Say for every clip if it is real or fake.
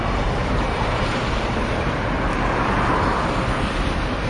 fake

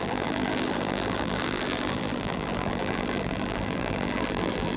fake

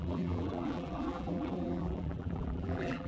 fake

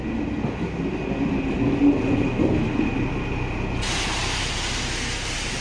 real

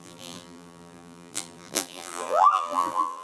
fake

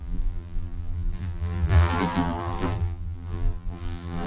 fake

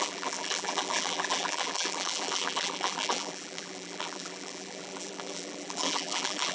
fake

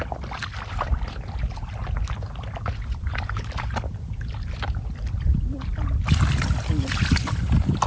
fake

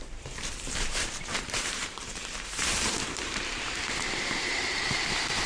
fake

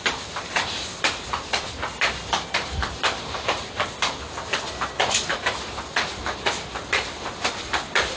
real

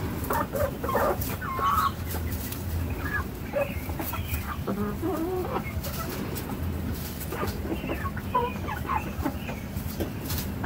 fake